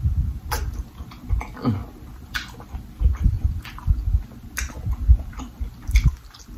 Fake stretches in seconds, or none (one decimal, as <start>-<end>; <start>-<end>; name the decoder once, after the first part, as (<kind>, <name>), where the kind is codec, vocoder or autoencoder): none

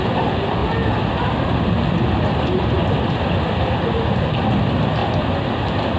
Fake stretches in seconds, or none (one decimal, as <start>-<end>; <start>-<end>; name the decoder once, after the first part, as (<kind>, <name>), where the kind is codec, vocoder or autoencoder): 0.0-0.6 (vocoder, BigVGAN v2); 4.2-5.0; 5.5-6.0

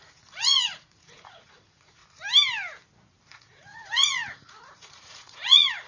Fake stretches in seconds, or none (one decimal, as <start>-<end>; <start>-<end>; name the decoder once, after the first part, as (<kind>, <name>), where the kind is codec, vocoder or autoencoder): 0.0-2.0 (vocoder, Vocos); 3.3-5.9

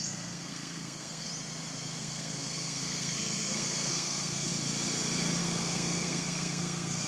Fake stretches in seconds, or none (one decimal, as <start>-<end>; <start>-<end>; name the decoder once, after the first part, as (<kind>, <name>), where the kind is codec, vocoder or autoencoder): 0.0-1.3 (codec, SNAC); 2.0-4.5; 5.4-7.1

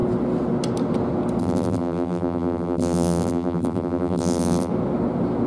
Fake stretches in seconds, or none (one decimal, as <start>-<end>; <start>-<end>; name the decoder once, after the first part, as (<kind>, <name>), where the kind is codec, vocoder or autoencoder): 1.4-4.7 (vocoder, BigVGAN v2)

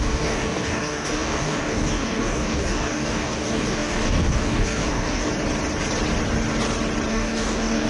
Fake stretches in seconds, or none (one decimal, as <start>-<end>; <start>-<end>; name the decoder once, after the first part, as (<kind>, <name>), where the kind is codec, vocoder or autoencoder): 0.0-5.3 (codec, DAC); 7.1-7.9

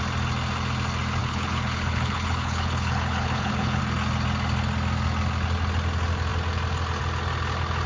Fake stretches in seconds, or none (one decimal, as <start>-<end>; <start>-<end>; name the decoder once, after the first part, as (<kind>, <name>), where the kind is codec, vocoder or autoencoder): 1.2-3.8 (codec, HILCodec)